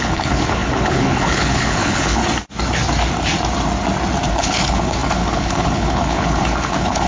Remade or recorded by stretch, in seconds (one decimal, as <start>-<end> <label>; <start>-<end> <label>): 0.0-2.2 remade; 2.2-4.3 recorded; 4.3-7.1 remade